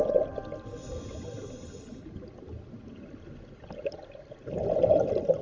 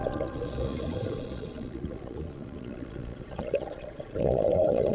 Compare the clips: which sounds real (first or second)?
first